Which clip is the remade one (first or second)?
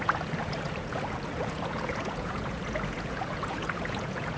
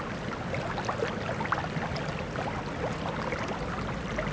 first